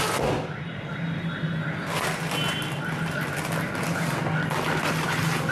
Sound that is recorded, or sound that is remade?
recorded